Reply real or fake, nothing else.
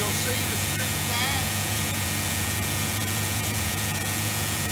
fake